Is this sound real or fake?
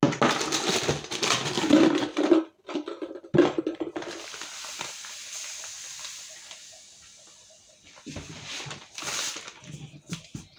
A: real